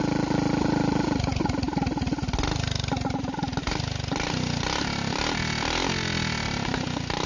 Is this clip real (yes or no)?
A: yes